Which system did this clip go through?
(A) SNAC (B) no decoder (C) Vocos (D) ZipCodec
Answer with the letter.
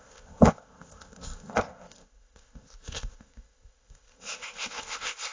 D